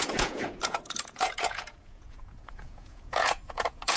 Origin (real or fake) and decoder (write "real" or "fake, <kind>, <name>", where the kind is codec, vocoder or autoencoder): fake, vocoder, Vocos